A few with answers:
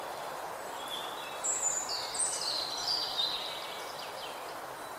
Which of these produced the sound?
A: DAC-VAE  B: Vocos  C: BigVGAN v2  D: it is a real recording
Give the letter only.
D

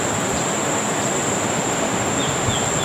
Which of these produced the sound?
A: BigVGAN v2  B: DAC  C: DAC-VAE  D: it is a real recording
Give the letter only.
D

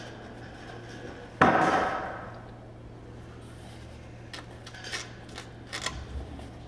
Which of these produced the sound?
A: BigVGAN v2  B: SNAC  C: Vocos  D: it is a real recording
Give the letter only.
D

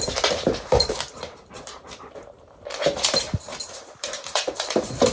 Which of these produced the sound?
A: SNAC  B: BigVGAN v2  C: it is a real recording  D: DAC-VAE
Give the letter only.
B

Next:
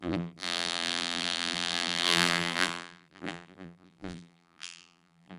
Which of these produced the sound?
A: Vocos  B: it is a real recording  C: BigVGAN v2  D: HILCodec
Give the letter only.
C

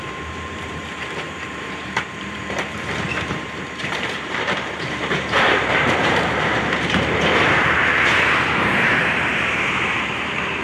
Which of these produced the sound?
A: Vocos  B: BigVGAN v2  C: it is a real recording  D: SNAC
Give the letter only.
B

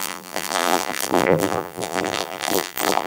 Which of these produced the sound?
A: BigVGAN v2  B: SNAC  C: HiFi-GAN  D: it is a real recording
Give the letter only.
A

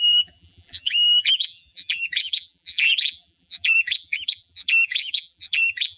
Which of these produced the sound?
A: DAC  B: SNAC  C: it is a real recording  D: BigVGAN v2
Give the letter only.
D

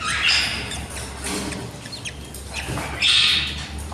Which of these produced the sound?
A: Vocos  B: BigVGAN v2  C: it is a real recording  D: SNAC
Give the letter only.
C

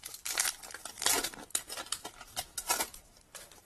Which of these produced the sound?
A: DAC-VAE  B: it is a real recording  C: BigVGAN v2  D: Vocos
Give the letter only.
C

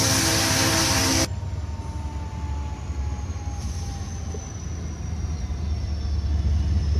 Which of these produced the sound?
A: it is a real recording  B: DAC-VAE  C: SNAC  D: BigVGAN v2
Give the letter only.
A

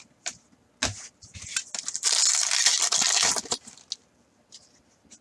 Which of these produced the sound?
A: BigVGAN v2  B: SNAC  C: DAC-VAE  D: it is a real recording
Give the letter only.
D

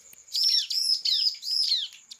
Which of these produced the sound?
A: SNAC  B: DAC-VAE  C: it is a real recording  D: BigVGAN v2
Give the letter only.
D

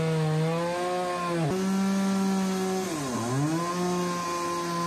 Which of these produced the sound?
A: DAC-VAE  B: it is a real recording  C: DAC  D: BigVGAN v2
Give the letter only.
B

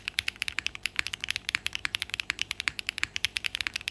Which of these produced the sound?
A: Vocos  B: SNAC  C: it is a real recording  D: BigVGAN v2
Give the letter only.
D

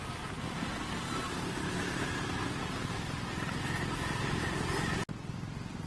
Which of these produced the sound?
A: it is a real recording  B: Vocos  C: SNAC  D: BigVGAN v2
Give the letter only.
A